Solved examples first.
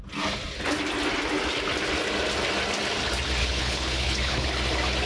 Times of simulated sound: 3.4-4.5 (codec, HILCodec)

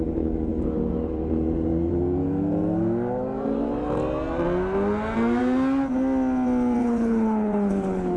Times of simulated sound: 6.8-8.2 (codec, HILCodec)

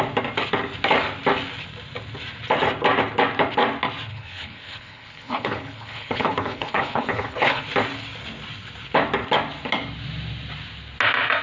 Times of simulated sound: 4.1-7.6 (codec, HILCodec)